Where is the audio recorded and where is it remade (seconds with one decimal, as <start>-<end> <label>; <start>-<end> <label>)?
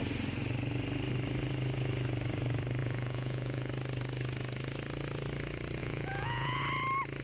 0.0-2.8 recorded; 2.8-3.7 remade; 3.7-5.8 recorded; 5.8-6.6 remade; 6.6-7.2 recorded